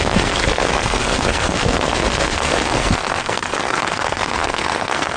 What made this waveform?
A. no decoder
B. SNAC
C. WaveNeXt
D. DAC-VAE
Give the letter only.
B